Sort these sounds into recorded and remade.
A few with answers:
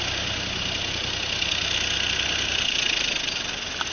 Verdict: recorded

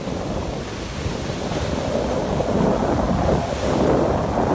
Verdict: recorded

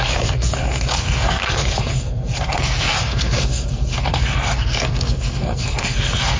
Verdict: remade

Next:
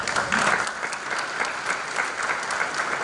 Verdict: recorded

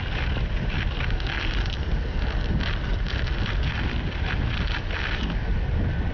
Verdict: recorded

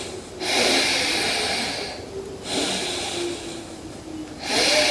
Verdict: recorded